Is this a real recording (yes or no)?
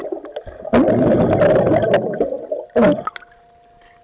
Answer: yes